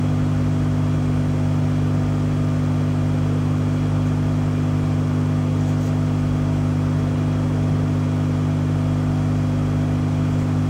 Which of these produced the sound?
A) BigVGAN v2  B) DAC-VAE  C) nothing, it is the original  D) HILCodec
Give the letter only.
C